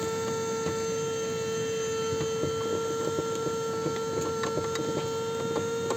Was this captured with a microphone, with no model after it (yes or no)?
yes